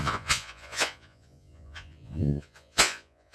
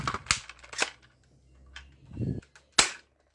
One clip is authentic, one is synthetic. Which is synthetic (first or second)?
first